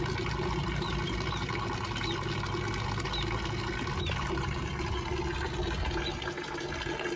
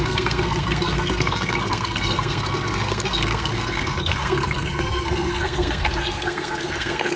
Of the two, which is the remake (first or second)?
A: second